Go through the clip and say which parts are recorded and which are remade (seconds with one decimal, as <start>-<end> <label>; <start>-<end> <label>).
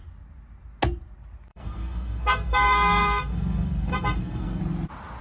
0.0-1.5 recorded; 1.5-4.6 remade; 4.6-5.2 recorded